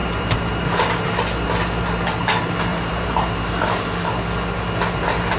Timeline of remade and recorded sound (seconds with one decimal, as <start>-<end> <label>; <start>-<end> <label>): 0.0-0.6 remade; 0.6-2.7 recorded; 2.7-4.2 remade; 4.2-5.4 recorded